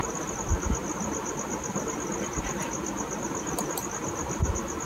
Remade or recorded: recorded